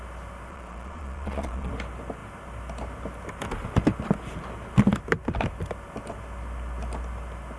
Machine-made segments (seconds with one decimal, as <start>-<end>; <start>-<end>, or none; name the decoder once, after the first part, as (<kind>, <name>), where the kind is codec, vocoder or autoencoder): 0.5-1.7 (vocoder, Vocos)